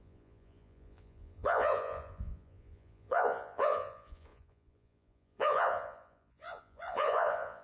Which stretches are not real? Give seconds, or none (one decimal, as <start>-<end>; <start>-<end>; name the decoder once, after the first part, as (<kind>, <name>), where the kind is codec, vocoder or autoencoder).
0.0-7.6 (vocoder, Vocos)